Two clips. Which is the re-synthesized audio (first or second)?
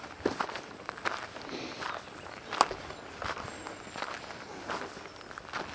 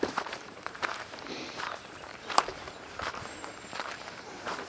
second